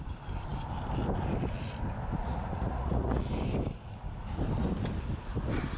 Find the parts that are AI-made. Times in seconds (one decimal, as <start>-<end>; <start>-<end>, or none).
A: 2.1-3.2